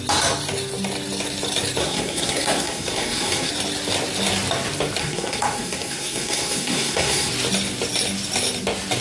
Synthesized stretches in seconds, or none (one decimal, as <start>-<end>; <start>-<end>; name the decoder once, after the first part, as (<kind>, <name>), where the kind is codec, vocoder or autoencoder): 1.8-3.5 (codec, SNAC); 5.0-7.3